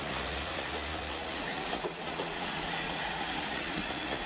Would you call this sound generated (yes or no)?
yes